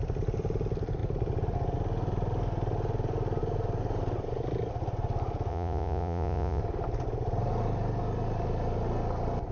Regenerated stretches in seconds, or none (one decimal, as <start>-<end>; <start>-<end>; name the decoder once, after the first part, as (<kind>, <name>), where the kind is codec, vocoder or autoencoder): 5.5-6.6 (vocoder, Vocos)